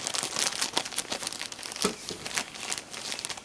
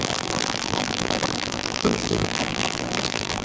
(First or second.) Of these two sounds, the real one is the first